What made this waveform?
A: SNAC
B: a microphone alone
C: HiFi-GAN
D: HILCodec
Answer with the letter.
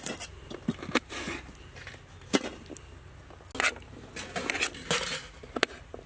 B